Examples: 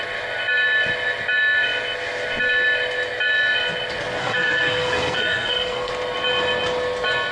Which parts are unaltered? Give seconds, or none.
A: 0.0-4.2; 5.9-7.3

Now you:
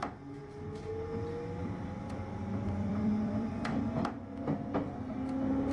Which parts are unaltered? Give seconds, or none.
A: 0.0-1.6; 3.8-5.7

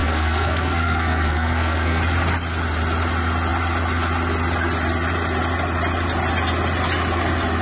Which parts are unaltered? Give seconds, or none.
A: 2.0-7.6

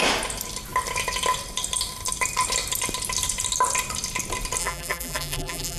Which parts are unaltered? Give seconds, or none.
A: 0.0-4.6

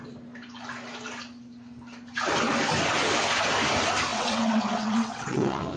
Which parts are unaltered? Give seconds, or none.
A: 0.0-4.1

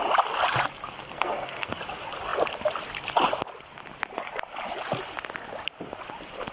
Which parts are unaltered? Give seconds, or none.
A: 0.0-1.0; 1.7-6.5

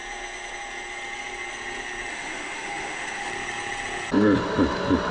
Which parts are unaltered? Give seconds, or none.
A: 0.0-2.1; 3.3-5.1

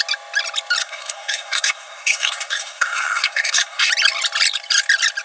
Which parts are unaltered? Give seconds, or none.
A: 0.0-0.8; 3.9-5.2